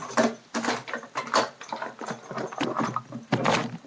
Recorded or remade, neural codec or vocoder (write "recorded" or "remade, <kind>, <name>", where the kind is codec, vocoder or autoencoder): recorded